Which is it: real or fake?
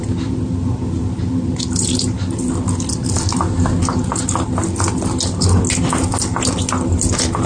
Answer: real